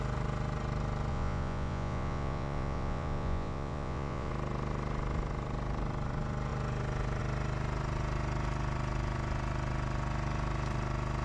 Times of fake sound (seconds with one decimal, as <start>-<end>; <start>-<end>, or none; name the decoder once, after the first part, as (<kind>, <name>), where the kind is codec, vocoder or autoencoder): 1.1-4.3 (vocoder, Vocos)